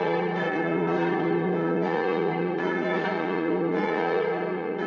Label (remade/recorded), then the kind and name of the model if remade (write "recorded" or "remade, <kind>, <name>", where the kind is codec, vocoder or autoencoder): remade, vocoder, Vocos